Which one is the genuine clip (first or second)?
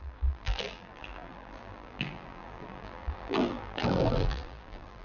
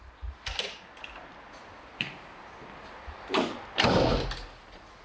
second